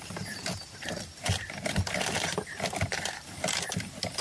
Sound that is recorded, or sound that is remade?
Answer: recorded